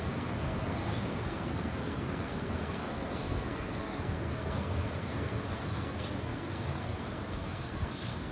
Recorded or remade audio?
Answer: remade